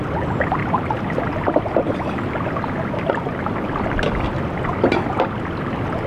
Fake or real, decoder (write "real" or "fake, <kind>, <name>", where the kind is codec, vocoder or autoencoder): real